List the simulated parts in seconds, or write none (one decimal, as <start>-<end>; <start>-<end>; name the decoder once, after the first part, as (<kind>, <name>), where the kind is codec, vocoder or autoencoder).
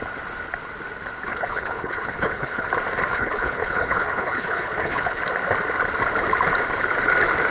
1.3-2.7 (codec, HILCodec); 3.1-5.2